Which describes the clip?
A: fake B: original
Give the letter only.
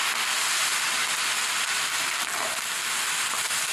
B